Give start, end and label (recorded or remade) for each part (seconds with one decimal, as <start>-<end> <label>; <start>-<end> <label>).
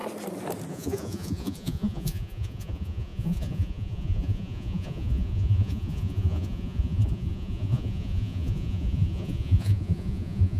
0.0-0.7 recorded; 0.7-10.6 remade